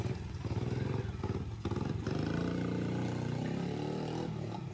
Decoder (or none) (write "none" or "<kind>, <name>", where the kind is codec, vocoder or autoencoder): none